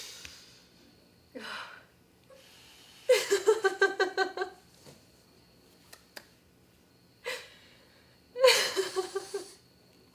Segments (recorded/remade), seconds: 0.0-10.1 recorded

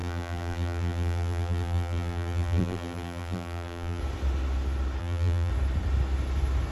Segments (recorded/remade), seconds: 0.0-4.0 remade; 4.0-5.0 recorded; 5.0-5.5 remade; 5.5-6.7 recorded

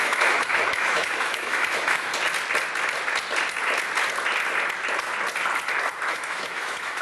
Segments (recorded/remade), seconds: 0.0-2.1 remade; 2.1-6.1 recorded; 6.1-7.0 remade

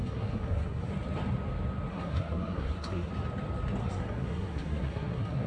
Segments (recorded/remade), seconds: 0.0-0.9 remade; 0.9-1.9 recorded; 1.9-3.1 remade; 3.1-3.8 recorded; 3.8-5.5 remade

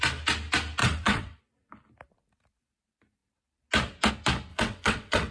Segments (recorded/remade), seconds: 0.0-0.8 recorded; 0.8-1.4 remade; 1.4-4.5 recorded; 4.5-5.3 remade

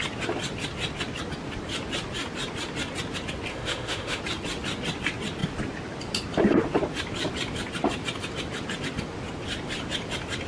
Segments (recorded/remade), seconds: 0.0-3.5 recorded; 3.5-4.2 remade; 4.2-10.5 recorded